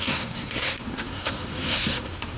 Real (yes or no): no